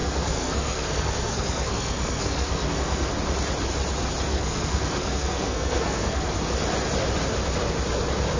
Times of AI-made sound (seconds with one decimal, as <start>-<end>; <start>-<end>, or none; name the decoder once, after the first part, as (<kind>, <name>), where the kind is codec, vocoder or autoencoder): 0.0-3.1 (codec, SNAC); 4.3-6.3

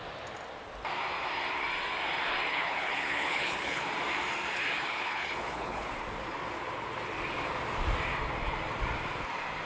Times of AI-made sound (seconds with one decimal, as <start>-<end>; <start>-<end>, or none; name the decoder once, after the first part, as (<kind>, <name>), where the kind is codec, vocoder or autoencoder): 2.5-3.8 (codec, HILCodec); 4.9-5.9

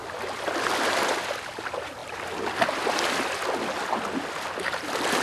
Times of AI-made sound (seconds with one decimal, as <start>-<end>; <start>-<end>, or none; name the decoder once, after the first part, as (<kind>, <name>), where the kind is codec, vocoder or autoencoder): none

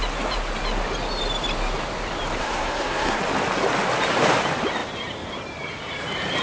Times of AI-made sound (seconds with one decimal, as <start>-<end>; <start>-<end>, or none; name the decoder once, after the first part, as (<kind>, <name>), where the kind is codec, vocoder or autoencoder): 2.4-3.2 (codec, SNAC)

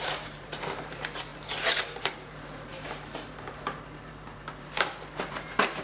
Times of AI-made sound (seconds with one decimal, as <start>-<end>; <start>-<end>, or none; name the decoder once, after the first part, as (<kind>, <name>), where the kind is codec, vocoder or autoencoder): 0.0-5.8 (vocoder, BigVGAN v2)

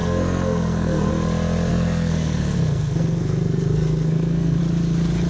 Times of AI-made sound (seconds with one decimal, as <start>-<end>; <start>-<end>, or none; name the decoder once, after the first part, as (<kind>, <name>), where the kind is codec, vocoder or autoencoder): 0.0-1.1 (codec, SNAC); 1.7-4.6

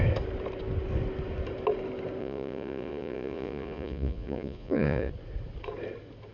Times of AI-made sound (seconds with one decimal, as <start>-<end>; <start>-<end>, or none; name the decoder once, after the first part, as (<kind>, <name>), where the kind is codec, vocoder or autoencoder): 2.2-5.1 (vocoder, Vocos)